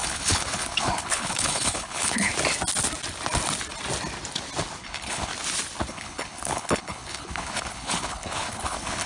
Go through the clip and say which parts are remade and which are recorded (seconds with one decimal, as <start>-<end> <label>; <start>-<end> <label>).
0.0-2.3 remade; 2.3-4.8 recorded; 4.8-5.3 remade; 5.3-5.9 recorded; 5.9-9.1 remade